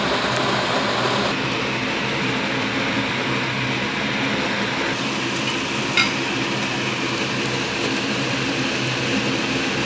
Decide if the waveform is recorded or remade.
recorded